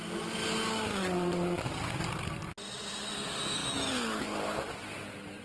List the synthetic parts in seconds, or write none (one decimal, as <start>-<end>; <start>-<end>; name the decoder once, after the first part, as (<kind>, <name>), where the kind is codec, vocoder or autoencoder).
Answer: none